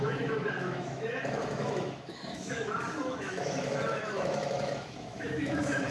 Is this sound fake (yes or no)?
yes